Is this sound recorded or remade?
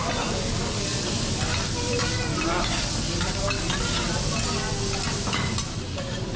recorded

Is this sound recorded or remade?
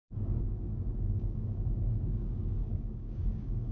remade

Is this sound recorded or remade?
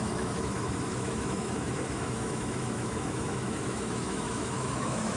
remade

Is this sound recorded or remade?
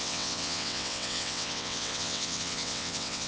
remade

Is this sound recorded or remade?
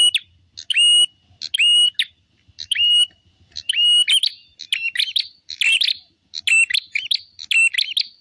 recorded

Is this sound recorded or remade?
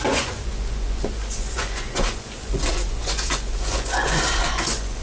remade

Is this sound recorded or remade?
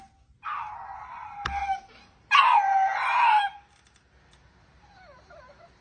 recorded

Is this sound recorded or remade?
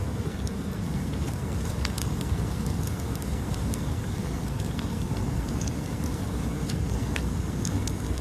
remade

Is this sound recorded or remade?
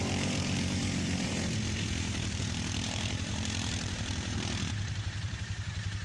remade